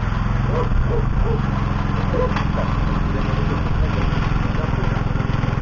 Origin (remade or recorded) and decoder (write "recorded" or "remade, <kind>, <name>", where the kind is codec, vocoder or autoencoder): recorded